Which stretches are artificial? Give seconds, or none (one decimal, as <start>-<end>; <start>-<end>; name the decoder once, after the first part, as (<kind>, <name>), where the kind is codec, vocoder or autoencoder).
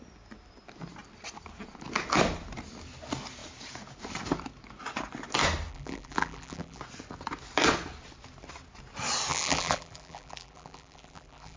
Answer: 5.7-6.8 (vocoder, BigVGAN v2); 9.3-11.6